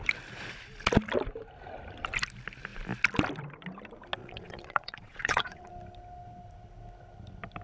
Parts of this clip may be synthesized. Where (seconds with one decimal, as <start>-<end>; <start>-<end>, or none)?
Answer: 4.2-5.7